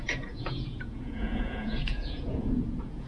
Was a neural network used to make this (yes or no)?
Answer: yes